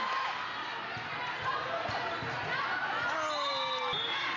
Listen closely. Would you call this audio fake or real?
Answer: real